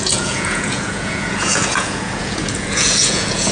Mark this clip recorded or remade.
remade